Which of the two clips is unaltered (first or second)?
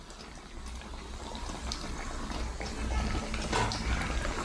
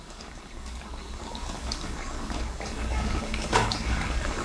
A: first